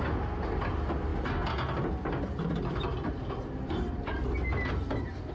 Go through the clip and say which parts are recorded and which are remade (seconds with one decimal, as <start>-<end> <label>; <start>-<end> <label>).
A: 0.0-5.3 recorded